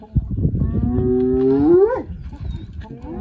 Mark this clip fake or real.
real